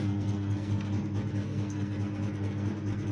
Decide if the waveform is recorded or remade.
remade